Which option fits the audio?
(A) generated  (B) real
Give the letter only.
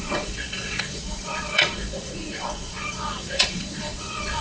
A